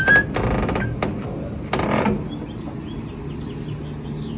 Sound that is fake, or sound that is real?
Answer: real